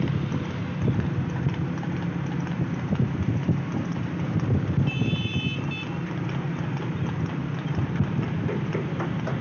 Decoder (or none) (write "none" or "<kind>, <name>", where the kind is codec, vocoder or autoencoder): none